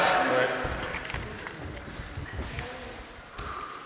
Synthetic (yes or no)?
no